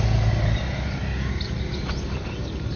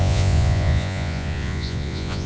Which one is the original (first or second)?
first